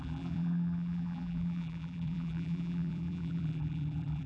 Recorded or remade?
remade